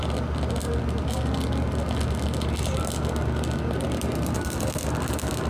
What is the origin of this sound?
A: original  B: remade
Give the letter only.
A